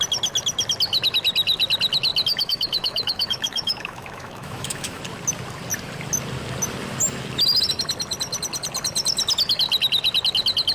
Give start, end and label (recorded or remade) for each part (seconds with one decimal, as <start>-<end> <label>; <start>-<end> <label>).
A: 0.0-2.3 recorded; 2.3-5.0 remade; 5.0-10.7 recorded